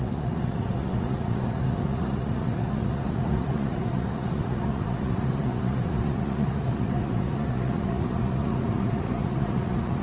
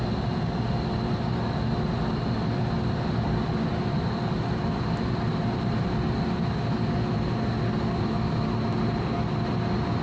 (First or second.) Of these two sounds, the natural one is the second